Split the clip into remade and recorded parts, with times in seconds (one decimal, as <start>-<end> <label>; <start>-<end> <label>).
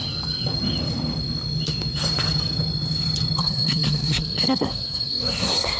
0.0-3.4 recorded; 3.4-5.8 remade